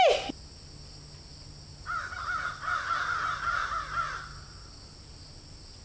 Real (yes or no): yes